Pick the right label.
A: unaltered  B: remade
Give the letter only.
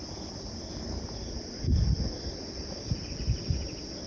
A